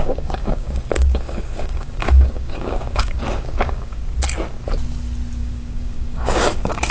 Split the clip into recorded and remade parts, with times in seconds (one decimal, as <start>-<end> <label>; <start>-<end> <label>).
0.0-4.0 remade; 4.0-5.4 recorded; 5.4-6.9 remade